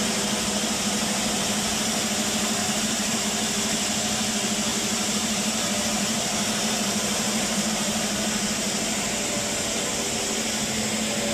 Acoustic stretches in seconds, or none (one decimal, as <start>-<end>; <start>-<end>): 0.0-2.6; 3.2-4.7; 7.7-11.3

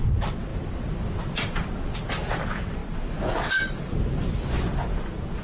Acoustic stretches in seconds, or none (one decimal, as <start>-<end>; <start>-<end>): 0.0-0.5; 1.7-2.8; 3.7-5.4

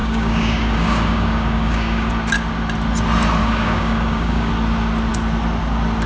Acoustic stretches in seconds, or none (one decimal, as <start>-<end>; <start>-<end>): 2.1-3.4; 4.5-6.1

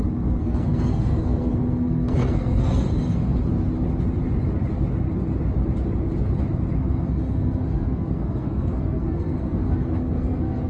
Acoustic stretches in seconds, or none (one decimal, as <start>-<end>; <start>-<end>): 3.4-6.8

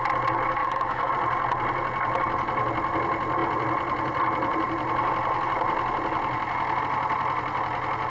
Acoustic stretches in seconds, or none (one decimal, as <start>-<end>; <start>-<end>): 0.0-0.6; 1.1-8.1

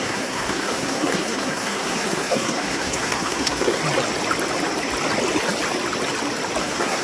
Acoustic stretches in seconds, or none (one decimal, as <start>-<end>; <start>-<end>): 3.8-6.6